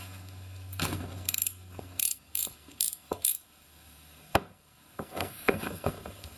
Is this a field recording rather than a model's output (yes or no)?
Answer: no